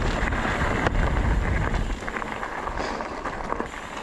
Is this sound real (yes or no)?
yes